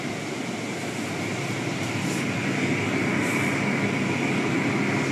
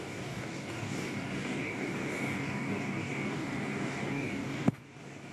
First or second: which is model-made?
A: second